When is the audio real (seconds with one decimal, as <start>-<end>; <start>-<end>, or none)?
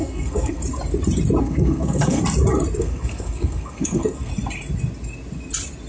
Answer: 0.6-1.4; 2.2-2.8; 4.3-5.9